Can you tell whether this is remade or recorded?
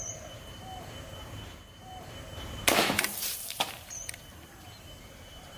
remade